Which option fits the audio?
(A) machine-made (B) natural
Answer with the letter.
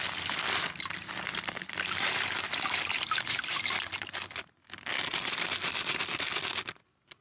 B